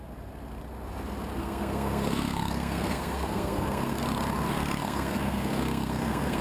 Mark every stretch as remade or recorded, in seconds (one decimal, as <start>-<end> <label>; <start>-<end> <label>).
0.0-1.4 recorded; 1.4-4.0 remade; 4.0-4.8 recorded; 4.8-6.4 remade